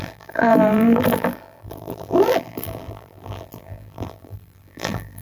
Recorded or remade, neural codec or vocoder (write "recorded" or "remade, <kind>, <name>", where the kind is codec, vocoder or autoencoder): remade, vocoder, BigVGAN v2